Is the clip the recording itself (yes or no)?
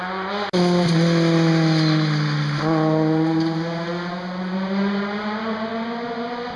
yes